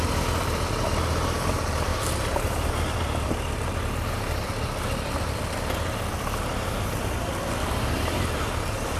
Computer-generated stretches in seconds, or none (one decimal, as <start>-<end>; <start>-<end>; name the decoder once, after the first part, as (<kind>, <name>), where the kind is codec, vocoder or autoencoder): 1.9-2.7 (vocoder, BigVGAN v2)